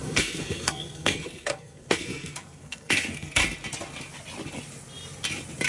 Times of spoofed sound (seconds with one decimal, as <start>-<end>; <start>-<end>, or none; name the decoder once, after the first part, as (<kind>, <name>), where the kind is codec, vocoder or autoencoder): 0.0-3.4 (codec, SNAC)

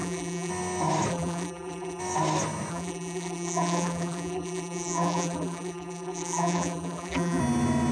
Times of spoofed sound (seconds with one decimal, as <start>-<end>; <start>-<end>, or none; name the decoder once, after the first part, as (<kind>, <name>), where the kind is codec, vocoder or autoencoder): 0.0-0.5 (vocoder, BigVGAN v2); 1.1-2.0; 2.7-7.4